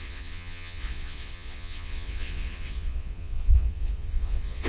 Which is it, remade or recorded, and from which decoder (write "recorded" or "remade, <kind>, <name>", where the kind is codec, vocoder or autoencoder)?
remade, vocoder, Vocos